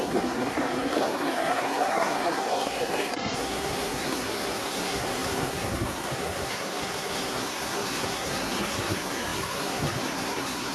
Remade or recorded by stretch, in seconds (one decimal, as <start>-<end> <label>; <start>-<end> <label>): 0.0-10.7 remade